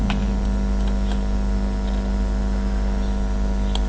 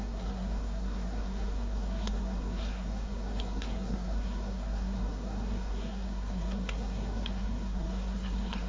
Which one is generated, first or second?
second